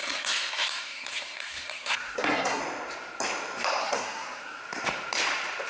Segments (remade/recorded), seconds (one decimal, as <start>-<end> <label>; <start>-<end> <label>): 0.0-2.6 remade; 2.6-3.8 recorded; 3.8-4.6 remade; 4.6-5.7 recorded